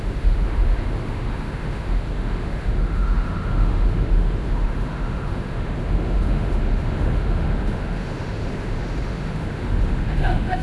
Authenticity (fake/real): fake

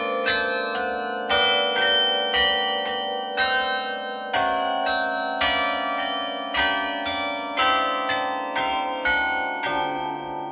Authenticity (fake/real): real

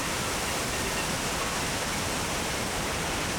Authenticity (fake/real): real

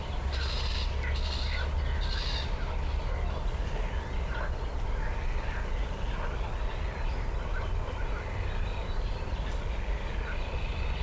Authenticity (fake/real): real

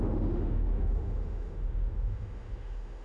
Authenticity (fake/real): fake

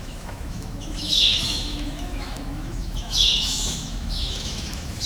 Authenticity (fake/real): fake